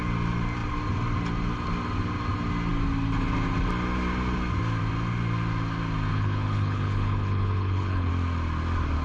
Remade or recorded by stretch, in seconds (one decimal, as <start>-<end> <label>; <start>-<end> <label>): 0.0-6.1 recorded; 6.1-8.1 remade; 8.1-9.0 recorded